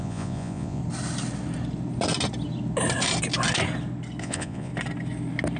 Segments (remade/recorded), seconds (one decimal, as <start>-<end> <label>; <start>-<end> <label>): 0.0-0.8 remade; 0.8-4.2 recorded; 4.2-4.7 remade; 4.7-5.6 recorded